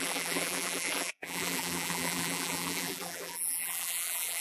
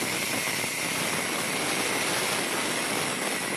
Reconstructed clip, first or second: first